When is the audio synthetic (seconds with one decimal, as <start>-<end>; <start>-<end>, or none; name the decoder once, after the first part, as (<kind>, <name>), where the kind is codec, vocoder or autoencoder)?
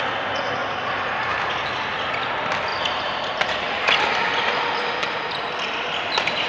none